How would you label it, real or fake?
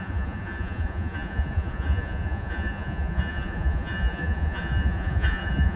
fake